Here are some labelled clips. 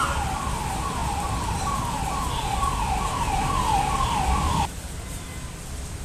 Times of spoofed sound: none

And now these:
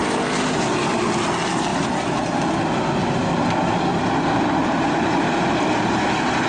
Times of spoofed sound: 1.7-2.4; 3.0-6.5

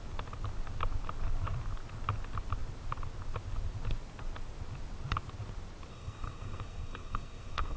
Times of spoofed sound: 5.9-7.8

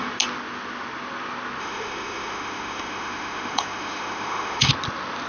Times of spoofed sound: 1.6-4.7

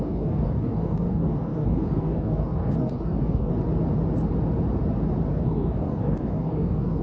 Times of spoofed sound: 0.0-3.5; 5.4-7.0

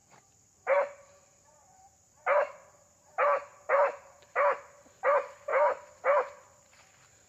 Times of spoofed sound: 0.0-3.1; 3.5-4.4

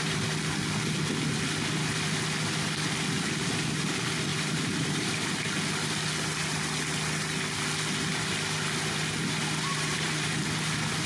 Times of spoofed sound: 4.3-5.1; 9.7-10.3